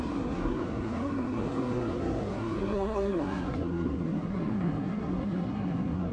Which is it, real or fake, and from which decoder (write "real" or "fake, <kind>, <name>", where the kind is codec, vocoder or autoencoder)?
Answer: fake, codec, SNAC